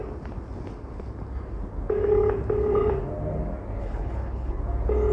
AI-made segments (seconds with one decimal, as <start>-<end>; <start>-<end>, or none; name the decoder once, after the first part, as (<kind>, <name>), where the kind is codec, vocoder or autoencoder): 3.8-4.6 (codec, HILCodec)